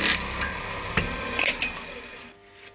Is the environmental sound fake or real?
real